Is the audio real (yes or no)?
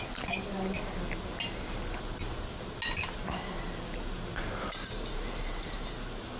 yes